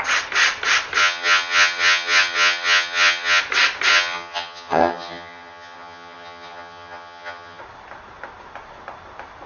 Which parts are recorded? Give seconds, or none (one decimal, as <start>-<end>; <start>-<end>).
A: 0.0-1.0; 3.4-3.9; 7.6-9.5